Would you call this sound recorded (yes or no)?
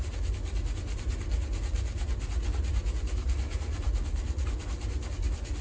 yes